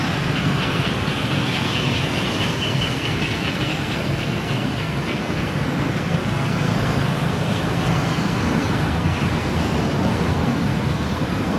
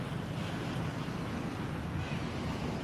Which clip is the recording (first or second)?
second